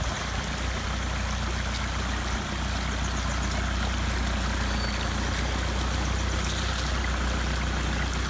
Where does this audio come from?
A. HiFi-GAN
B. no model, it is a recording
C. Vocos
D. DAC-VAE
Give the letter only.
B